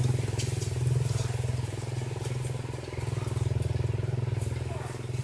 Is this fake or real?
real